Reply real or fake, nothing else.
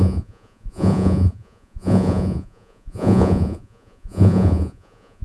fake